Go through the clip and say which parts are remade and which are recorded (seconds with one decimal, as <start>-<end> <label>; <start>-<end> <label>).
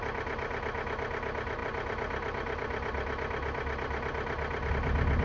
0.0-5.2 recorded